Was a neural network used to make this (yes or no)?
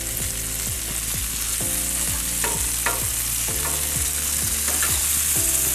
no